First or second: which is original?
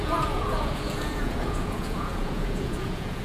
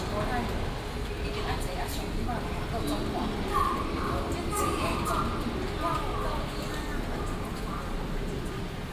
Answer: second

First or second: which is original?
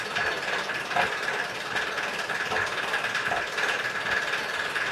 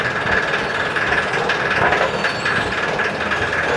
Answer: second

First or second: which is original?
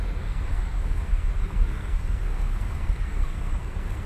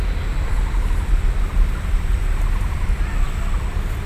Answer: second